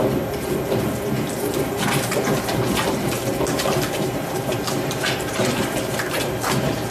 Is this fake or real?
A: fake